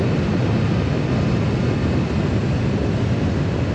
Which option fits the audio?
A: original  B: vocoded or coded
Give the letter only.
A